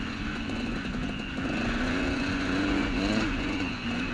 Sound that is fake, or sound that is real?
fake